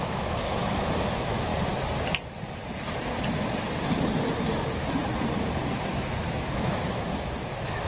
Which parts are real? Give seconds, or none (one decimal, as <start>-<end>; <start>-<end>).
1.5-6.2